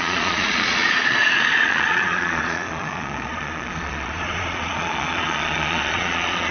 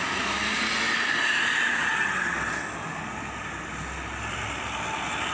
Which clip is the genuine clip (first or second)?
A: second